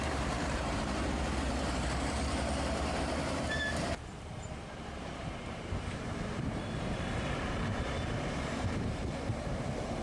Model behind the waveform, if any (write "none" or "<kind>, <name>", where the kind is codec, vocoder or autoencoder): vocoder, BigVGAN v2